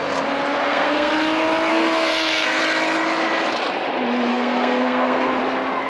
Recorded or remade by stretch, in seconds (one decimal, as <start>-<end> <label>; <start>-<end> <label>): 0.0-0.6 recorded; 0.6-1.1 remade; 1.1-1.7 recorded; 1.7-2.6 remade; 2.6-4.3 recorded; 4.3-5.4 remade; 5.4-5.9 recorded